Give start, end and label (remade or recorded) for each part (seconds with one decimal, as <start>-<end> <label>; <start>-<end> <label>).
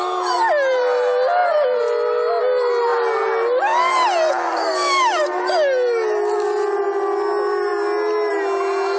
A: 0.0-9.0 recorded